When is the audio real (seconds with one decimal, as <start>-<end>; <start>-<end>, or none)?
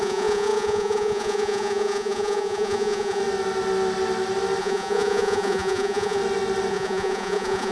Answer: 3.2-4.6; 6.2-6.7